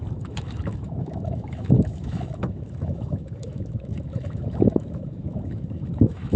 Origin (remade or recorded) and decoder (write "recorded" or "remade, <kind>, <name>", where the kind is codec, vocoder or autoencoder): remade, autoencoder, DAC-VAE